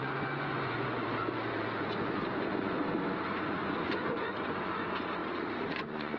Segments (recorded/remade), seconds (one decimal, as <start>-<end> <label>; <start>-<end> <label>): 0.0-2.8 remade; 2.8-3.3 recorded; 3.3-6.2 remade